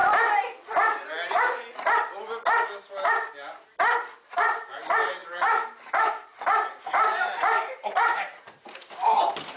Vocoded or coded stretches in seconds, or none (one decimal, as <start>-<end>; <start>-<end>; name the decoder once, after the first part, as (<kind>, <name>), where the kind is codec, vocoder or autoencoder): 4.3-9.6 (vocoder, BigVGAN v2)